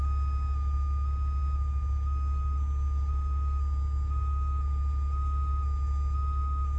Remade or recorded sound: recorded